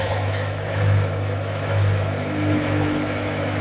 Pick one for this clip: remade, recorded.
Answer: remade